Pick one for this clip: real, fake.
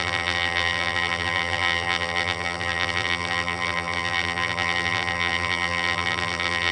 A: fake